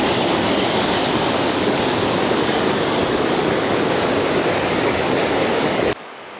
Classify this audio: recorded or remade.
remade